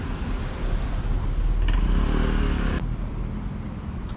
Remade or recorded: remade